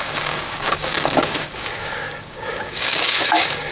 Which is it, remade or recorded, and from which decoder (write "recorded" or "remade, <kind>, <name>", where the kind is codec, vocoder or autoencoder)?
remade, codec, DAC